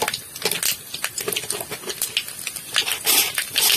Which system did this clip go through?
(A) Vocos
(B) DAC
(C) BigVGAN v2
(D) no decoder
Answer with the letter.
D